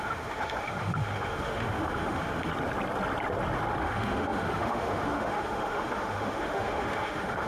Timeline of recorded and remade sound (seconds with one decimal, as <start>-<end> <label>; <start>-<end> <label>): 0.0-2.5 remade; 2.5-3.8 recorded; 3.8-7.5 remade